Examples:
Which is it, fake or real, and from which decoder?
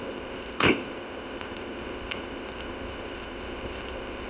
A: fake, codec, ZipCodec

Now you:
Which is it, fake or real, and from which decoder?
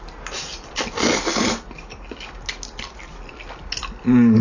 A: real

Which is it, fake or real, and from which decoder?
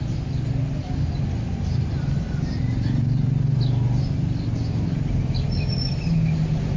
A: real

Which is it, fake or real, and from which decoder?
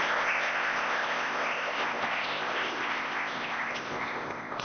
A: fake, codec, ZipCodec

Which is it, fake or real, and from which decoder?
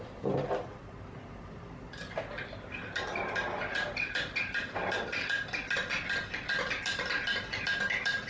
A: real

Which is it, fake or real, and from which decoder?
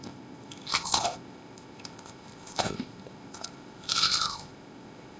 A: fake, codec, ZipCodec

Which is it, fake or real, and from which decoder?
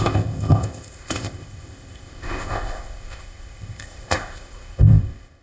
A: fake, codec, ZipCodec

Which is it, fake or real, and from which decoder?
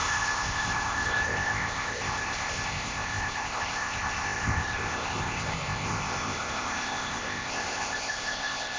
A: fake, codec, ZipCodec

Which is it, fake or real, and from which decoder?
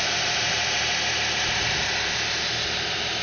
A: real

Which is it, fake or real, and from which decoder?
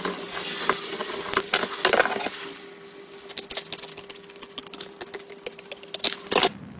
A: real